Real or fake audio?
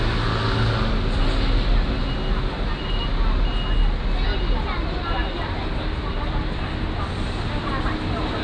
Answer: real